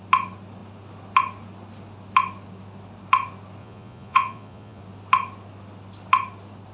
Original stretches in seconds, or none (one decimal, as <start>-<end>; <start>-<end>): 0.0-3.6; 4.8-6.7